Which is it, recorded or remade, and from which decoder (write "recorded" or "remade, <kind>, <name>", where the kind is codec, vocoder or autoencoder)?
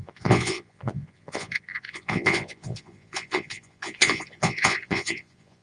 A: remade, vocoder, Vocos